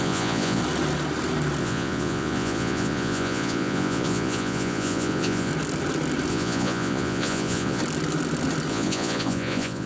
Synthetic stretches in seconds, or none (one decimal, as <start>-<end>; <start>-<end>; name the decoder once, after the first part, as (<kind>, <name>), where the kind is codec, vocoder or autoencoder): 0.0-0.6 (vocoder, Vocos); 1.6-5.5; 6.3-7.8; 8.7-9.9